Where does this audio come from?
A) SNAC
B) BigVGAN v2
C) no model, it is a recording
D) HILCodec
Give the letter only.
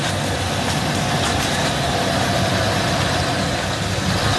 B